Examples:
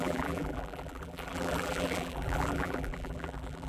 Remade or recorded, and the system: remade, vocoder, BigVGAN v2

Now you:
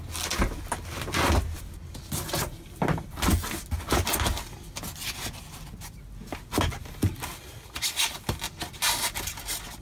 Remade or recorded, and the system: recorded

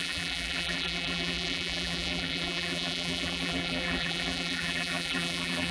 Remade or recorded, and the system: remade, vocoder, BigVGAN v2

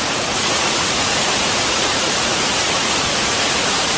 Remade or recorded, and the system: remade, vocoder, Vocos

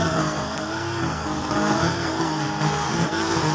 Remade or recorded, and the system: remade, codec, SNAC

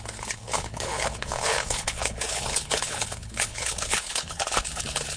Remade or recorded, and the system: remade, codec, HILCodec